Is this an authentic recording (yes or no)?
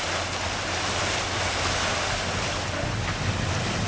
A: yes